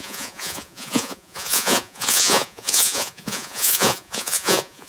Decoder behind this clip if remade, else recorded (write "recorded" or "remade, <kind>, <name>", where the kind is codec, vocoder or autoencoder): remade, vocoder, Vocos